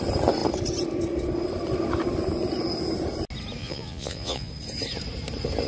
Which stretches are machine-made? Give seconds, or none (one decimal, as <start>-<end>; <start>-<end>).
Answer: 3.6-4.5